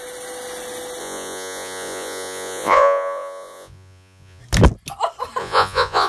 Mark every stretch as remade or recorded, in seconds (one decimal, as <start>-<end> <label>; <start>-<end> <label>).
0.0-1.0 recorded; 1.0-4.4 remade; 4.4-5.4 recorded; 5.4-6.1 remade